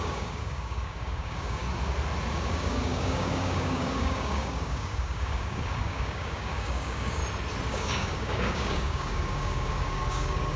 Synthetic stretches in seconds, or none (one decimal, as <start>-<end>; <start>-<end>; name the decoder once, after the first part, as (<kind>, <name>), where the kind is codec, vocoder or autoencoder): 0.0-1.6 (codec, DAC); 2.3-7.2; 7.7-10.6